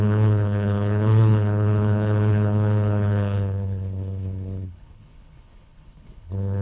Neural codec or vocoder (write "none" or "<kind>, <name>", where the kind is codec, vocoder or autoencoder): codec, HILCodec